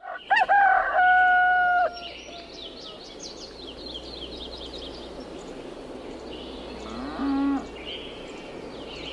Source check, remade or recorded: recorded